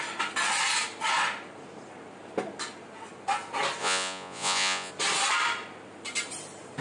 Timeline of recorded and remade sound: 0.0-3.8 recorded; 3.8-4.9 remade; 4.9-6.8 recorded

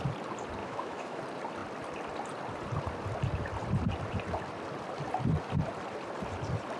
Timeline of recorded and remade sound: 0.0-0.6 recorded; 0.6-1.2 remade; 1.2-6.8 recorded

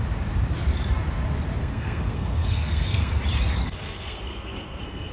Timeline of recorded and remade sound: 0.0-1.6 recorded; 1.6-3.2 remade; 3.2-3.6 recorded; 3.6-5.1 remade

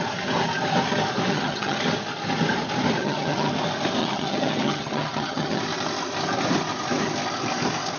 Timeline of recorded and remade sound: 0.0-1.3 recorded; 1.3-1.8 remade; 1.8-3.0 recorded; 3.0-3.5 remade; 3.5-4.0 recorded; 4.0-5.6 remade; 5.6-8.0 recorded